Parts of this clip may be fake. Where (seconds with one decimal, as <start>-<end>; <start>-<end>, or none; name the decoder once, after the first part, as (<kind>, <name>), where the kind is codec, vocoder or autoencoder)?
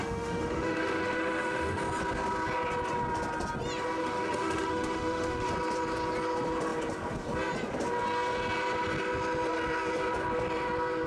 0.0-1.8 (autoencoder, DAC-VAE); 4.0-5.5